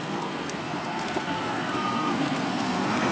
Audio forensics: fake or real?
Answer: fake